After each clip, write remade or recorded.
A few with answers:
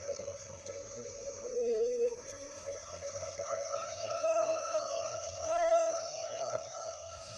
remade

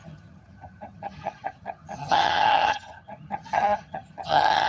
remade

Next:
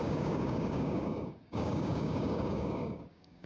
remade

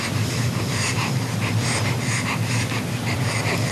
remade